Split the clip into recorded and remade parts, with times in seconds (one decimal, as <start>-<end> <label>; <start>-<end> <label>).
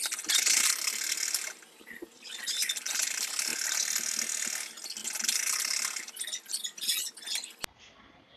0.0-8.4 recorded